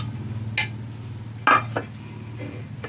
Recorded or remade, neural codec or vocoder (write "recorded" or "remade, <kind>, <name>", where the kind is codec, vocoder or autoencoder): recorded